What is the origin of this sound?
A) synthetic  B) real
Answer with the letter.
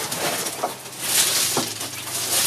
B